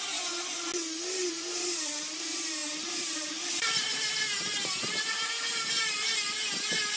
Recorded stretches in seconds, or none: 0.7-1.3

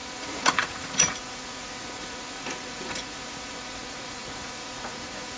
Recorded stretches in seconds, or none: none

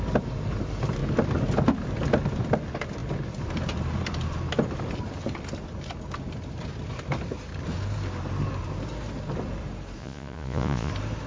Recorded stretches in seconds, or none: 0.0-10.0; 10.9-11.3

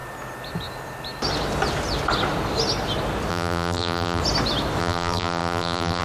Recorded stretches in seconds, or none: 0.0-3.3; 4.2-4.8